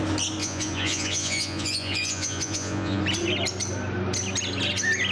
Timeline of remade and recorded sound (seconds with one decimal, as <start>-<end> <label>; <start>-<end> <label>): 0.0-0.4 recorded; 0.4-3.0 remade; 3.0-5.1 recorded

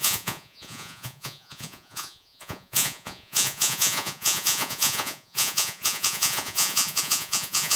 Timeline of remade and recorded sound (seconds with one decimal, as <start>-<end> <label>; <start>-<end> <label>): 0.0-7.8 remade